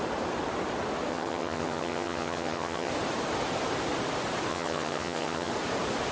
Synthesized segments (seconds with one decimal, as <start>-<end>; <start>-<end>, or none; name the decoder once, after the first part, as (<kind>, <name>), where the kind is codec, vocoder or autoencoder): 1.1-2.9 (vocoder, HiFi-GAN); 4.5-5.5